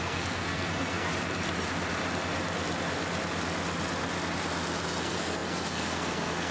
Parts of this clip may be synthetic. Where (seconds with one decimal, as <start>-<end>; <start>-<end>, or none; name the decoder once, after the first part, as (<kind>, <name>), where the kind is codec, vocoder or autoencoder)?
0.0-1.1 (codec, SNAC); 5.0-6.5